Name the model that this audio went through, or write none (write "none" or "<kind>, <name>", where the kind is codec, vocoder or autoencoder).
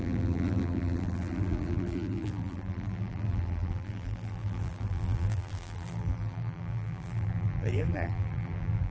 vocoder, BigVGAN v2